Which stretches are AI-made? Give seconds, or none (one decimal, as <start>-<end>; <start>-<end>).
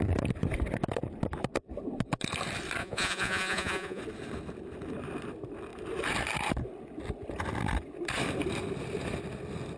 2.8-4.0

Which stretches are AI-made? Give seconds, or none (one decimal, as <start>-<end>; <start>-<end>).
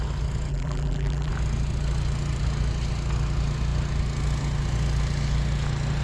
0.5-1.3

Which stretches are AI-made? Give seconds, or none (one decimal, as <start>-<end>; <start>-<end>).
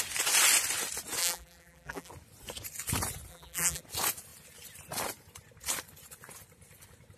1.2-2.1; 3.3-3.8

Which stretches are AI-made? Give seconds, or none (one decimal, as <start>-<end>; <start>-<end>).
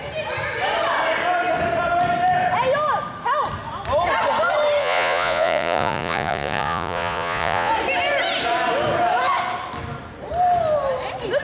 4.8-7.7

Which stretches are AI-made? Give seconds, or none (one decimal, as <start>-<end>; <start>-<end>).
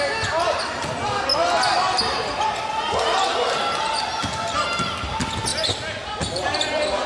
none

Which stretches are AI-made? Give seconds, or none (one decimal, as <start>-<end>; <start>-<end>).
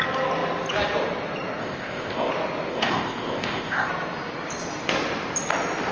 1.6-2.3; 2.7-3.9